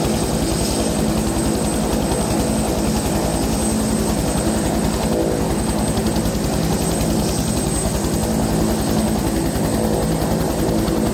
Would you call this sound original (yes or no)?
yes